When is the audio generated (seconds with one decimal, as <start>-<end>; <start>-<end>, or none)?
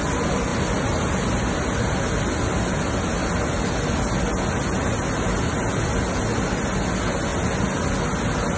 none